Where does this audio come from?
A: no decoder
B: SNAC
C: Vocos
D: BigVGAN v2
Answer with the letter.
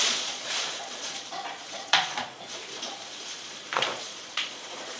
C